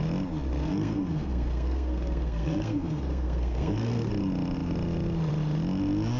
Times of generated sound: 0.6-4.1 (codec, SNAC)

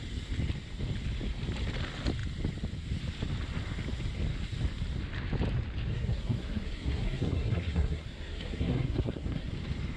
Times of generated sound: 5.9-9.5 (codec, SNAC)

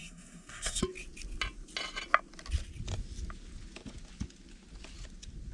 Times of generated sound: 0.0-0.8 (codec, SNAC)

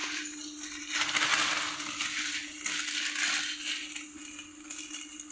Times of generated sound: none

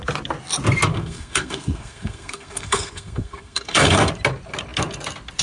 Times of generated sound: 0.9-4.1 (codec, SNAC)

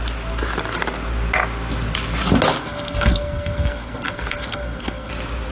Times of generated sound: 2.6-5.1 (codec, SNAC)

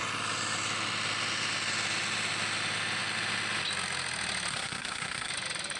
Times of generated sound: 4.5-5.3 (codec, SNAC)

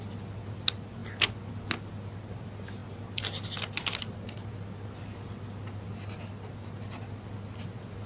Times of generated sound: none